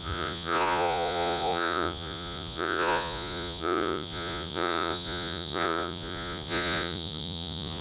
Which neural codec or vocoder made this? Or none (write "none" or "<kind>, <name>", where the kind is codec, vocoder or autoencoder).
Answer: vocoder, Vocos